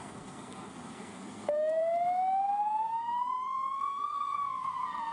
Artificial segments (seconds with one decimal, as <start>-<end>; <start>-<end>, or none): 0.0-1.8; 2.8-5.1